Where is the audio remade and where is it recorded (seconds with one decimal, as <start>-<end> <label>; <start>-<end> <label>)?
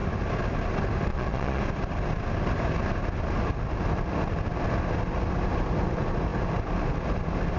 0.0-1.1 recorded; 1.1-1.6 remade; 1.6-7.6 recorded